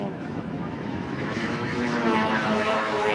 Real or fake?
fake